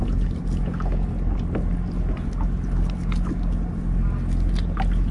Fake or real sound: real